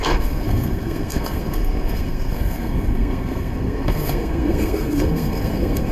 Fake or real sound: fake